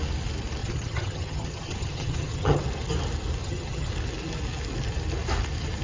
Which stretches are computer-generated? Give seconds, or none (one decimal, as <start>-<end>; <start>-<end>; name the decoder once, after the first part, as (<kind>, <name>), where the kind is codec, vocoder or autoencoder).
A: 0.6-2.6 (vocoder, HiFi-GAN); 3.4-3.9